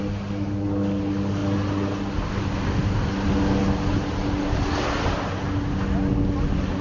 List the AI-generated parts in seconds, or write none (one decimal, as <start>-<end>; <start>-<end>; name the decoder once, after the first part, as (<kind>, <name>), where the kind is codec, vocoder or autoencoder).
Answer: none